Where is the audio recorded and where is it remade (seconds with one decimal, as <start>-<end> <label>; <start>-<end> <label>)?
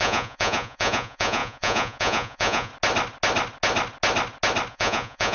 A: 0.0-2.7 remade; 2.7-4.7 recorded; 4.7-5.3 remade